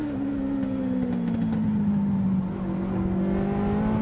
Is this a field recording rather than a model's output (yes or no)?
yes